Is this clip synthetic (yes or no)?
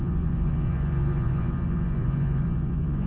yes